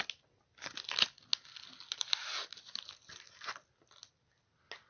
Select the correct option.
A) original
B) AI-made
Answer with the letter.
A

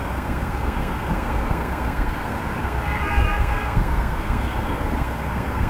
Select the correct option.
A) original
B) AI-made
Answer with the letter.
B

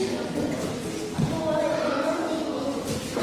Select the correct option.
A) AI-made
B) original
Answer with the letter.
B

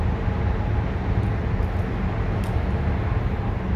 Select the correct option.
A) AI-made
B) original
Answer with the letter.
B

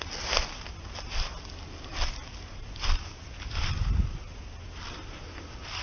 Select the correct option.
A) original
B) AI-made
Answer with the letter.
A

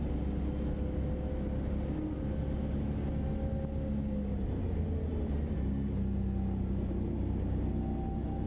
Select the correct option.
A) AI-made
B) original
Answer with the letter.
B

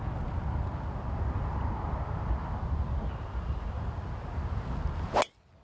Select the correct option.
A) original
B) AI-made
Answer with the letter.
A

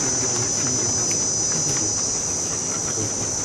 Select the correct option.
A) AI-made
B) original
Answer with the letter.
B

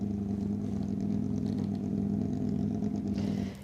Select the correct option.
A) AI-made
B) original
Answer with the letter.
B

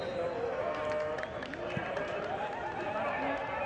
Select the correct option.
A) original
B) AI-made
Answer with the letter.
A